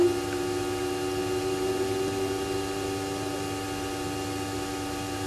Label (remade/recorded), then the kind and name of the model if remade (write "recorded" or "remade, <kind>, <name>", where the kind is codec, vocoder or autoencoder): recorded